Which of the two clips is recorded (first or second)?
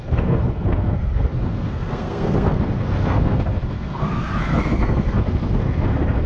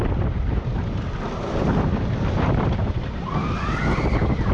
second